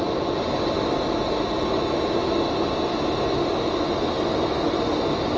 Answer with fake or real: real